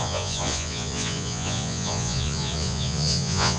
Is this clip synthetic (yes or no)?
yes